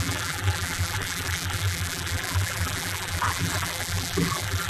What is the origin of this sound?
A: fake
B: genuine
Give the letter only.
A